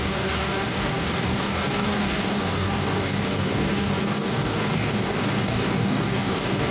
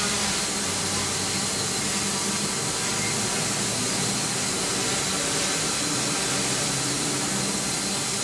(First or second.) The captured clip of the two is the second